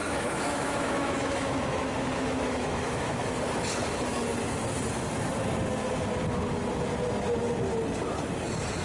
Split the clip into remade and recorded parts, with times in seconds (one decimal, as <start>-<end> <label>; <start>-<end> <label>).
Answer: 0.0-3.4 remade; 3.4-8.8 recorded